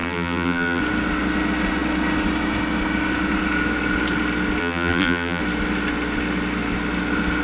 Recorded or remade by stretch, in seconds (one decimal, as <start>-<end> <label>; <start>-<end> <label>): 0.0-0.8 remade; 0.8-4.6 recorded; 4.6-5.4 remade; 5.4-7.4 recorded